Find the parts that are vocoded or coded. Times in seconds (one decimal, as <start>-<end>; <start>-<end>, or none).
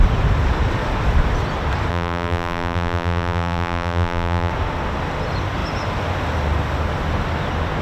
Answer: 1.9-4.5